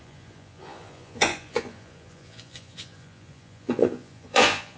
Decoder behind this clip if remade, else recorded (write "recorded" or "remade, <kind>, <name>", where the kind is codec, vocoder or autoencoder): remade, vocoder, Vocos